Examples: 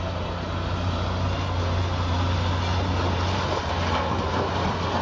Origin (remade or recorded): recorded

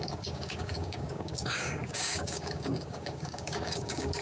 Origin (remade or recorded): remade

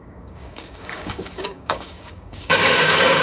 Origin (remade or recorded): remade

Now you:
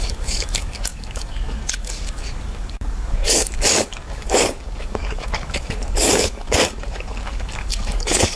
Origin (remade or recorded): remade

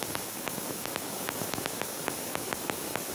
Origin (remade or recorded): remade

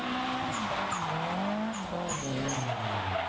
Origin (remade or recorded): recorded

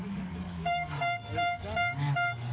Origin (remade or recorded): remade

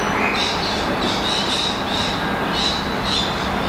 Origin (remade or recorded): recorded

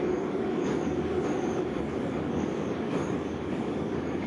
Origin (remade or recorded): remade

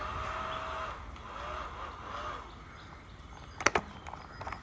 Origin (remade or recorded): recorded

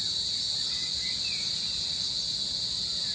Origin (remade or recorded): recorded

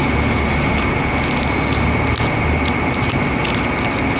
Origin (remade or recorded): recorded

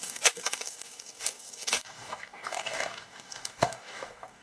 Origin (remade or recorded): remade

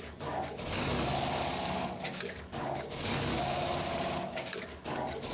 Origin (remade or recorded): remade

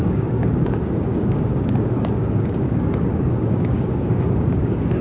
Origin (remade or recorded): remade